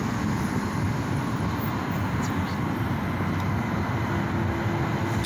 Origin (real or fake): real